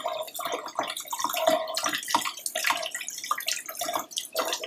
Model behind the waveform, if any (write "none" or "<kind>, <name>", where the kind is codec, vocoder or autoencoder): none